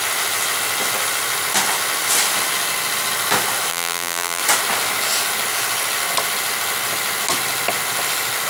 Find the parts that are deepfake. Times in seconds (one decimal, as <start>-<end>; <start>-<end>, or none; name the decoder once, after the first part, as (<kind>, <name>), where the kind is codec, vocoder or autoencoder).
3.7-4.4 (vocoder, BigVGAN v2)